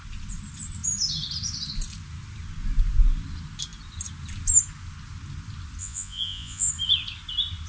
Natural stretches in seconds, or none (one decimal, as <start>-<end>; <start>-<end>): 0.0-5.8; 6.7-7.7